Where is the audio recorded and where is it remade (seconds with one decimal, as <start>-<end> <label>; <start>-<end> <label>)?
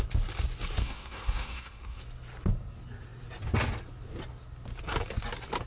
0.0-0.8 recorded; 0.8-2.0 remade; 2.0-5.7 recorded